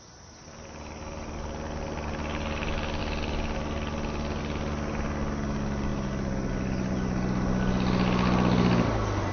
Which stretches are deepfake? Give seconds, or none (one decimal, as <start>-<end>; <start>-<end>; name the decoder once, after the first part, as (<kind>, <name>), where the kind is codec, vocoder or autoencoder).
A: none